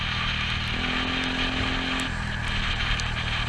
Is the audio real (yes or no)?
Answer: yes